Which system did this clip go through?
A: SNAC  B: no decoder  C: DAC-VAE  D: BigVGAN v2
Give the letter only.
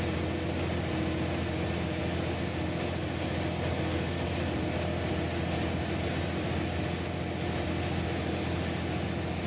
B